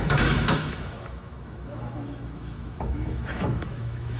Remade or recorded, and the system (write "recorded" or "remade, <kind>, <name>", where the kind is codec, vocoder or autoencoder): remade, autoencoder, DAC-VAE